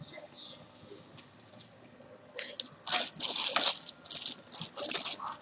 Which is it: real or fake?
real